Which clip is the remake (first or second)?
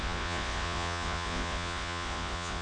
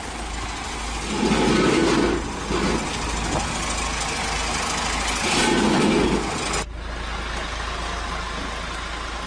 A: first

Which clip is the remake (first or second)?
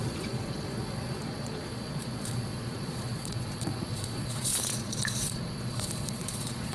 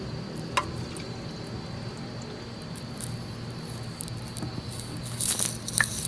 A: first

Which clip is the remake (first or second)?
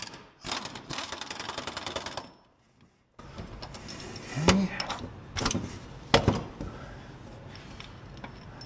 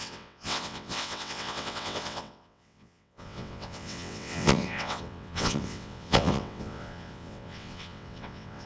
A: second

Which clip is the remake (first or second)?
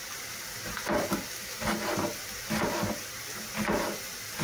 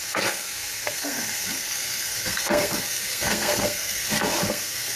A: second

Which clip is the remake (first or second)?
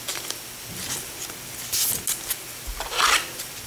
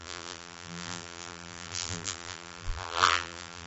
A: second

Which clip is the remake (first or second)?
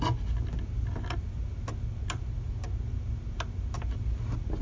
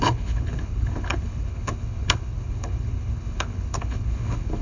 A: second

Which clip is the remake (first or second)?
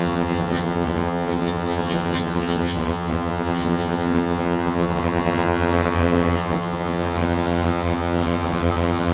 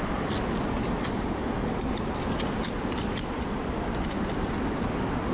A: first